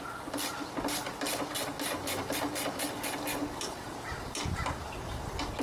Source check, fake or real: real